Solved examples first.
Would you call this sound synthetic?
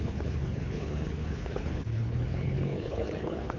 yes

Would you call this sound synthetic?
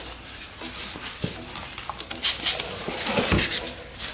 no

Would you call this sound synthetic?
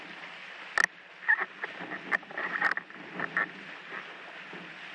no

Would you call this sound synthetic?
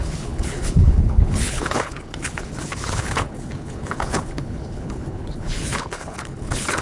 yes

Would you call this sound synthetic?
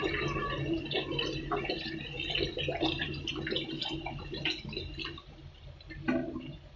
no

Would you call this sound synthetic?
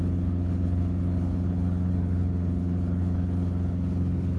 yes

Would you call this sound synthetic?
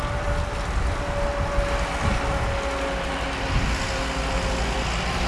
no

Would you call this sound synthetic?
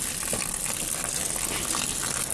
no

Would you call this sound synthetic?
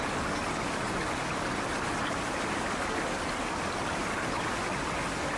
no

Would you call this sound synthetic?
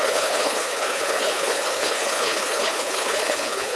yes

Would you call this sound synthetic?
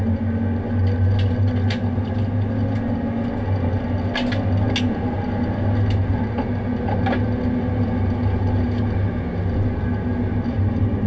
no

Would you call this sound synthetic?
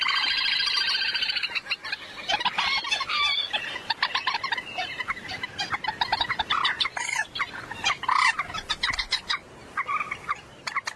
no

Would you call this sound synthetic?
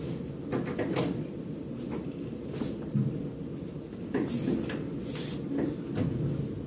no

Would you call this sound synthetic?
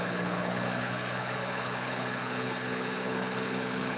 yes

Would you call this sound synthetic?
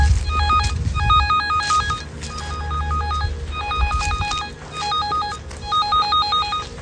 no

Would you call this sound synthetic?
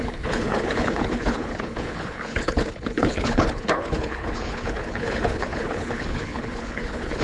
yes